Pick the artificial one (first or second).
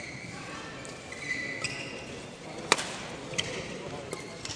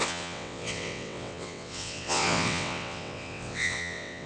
second